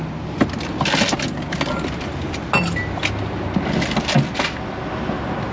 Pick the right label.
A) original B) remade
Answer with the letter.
A